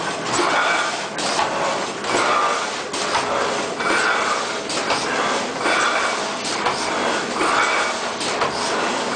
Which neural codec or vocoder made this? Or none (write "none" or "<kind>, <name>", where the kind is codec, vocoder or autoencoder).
none